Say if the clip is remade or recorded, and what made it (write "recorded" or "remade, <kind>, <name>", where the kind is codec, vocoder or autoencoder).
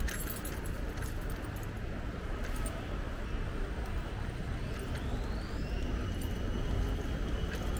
recorded